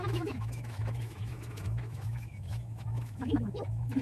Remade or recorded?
remade